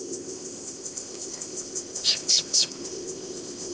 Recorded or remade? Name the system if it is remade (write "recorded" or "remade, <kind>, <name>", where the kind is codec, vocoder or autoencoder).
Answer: remade, codec, ZipCodec